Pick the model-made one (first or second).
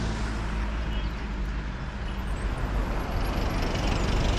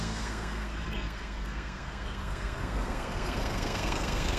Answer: second